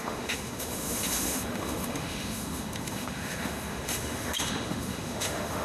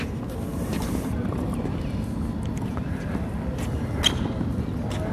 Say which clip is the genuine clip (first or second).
second